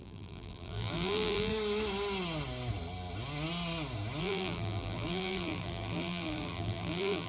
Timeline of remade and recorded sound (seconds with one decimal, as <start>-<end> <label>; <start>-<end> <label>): 0.0-1.5 remade; 1.5-4.2 recorded; 4.2-7.3 remade